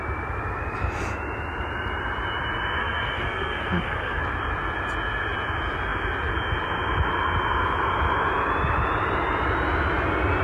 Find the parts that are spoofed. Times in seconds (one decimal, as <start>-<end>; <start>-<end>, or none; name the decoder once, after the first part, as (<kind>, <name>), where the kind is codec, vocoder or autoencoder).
2.8-4.2 (codec, SNAC)